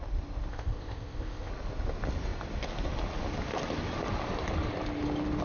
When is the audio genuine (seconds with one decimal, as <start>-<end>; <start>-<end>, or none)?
0.0-0.5; 1.5-5.4